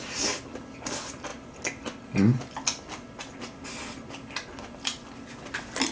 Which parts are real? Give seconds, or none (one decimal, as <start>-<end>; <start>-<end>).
0.0-5.9